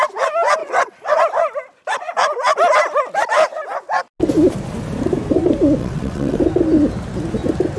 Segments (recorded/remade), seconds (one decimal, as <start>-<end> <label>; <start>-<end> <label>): 0.0-0.6 recorded; 0.6-1.2 remade; 1.2-5.8 recorded; 5.8-6.4 remade; 6.4-7.8 recorded